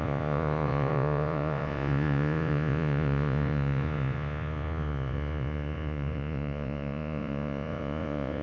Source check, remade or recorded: remade